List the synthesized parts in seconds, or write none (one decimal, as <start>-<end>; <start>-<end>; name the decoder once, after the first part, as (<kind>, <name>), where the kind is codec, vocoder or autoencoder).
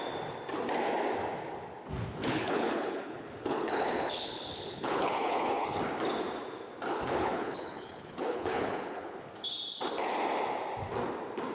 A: 2.2-5.8 (codec, HILCodec); 6.9-9.3